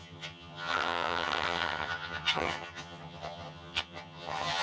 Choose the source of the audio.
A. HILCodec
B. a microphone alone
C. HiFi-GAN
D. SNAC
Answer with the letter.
C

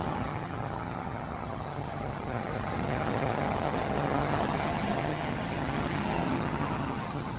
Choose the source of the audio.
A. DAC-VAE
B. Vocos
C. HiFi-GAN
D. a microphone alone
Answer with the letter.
C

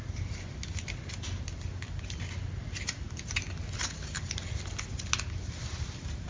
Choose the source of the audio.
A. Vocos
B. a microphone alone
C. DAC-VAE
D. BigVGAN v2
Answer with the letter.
B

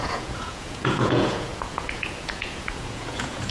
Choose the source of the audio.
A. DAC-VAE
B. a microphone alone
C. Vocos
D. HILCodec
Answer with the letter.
C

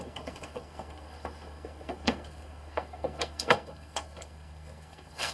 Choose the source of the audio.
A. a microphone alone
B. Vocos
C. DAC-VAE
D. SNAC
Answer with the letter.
D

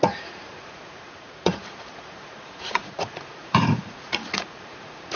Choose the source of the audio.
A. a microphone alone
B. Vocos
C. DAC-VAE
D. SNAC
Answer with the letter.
B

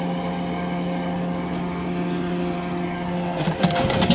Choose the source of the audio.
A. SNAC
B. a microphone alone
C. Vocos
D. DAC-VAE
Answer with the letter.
B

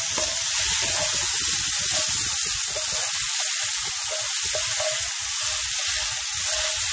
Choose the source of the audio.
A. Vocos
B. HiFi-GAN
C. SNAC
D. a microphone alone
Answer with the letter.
D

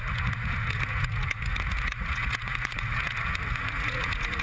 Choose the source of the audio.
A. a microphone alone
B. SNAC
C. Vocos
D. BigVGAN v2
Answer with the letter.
C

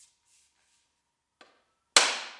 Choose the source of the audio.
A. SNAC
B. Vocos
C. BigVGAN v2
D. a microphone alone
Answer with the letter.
D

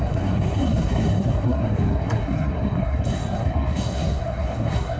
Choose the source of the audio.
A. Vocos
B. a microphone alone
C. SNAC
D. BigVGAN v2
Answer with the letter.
C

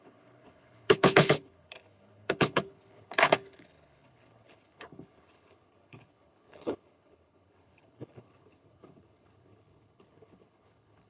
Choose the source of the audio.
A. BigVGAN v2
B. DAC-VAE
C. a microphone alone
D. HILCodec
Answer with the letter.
D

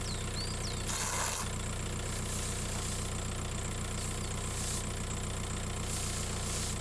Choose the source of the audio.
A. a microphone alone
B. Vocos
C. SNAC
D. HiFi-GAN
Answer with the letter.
A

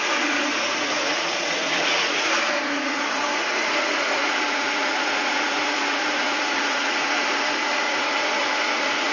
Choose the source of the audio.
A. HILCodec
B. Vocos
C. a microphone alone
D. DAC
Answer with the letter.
B